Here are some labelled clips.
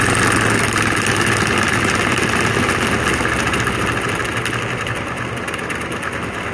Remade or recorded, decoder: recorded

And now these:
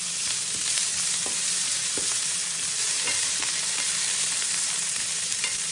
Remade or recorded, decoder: remade, vocoder, BigVGAN v2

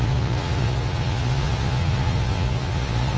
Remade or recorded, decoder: remade, vocoder, Vocos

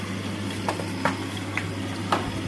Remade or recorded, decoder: recorded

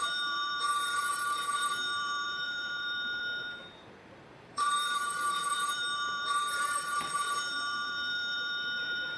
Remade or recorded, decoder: remade, vocoder, BigVGAN v2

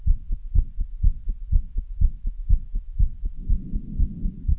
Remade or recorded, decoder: recorded